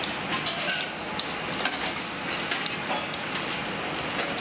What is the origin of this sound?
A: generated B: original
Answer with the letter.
B